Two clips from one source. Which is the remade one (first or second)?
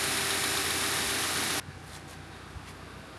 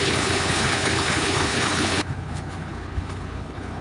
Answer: second